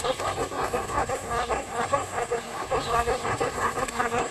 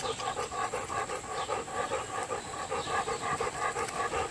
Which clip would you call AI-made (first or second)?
first